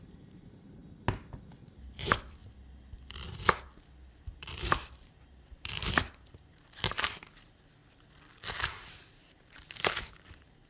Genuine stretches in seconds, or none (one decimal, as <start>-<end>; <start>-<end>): 0.8-1.6; 2.4-4.1; 7.8-8.6